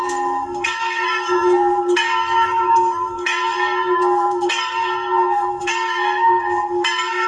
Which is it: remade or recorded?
remade